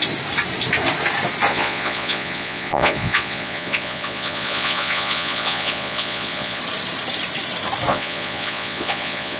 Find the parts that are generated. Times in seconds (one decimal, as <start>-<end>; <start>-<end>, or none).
1.5-6.6; 7.9-9.4